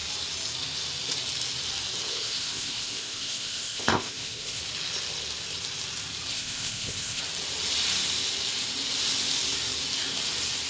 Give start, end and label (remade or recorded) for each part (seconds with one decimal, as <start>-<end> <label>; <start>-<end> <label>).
0.0-2.1 recorded; 2.1-4.6 remade; 4.6-6.3 recorded; 6.3-7.2 remade; 7.2-10.7 recorded